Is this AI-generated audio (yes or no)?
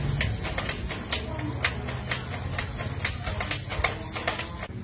no